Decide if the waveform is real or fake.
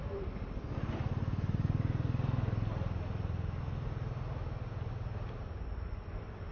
real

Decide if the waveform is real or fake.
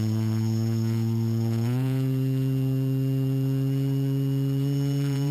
fake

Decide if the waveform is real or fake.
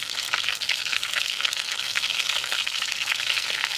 fake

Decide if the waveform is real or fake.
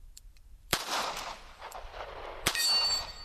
fake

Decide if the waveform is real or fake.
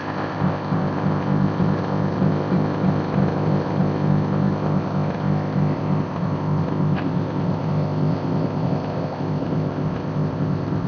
fake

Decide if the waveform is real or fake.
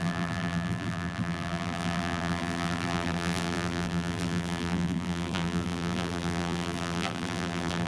fake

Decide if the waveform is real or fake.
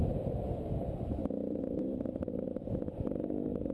fake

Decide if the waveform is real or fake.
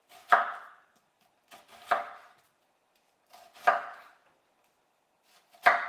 real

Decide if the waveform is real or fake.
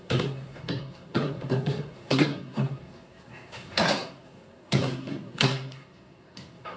fake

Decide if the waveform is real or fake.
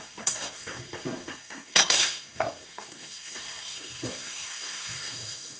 fake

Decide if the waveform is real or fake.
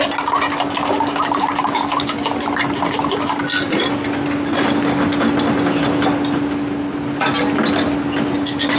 real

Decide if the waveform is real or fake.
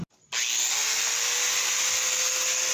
real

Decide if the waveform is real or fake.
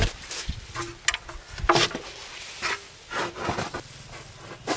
real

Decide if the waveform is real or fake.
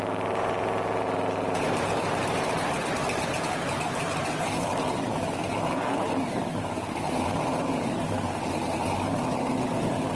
fake